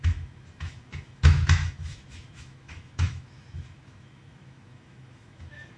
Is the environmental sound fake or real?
fake